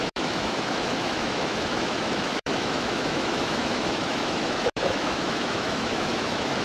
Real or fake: fake